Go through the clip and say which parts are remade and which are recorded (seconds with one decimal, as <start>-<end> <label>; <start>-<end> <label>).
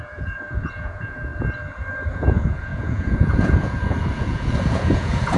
0.0-1.3 remade; 1.3-2.1 recorded; 2.1-5.4 remade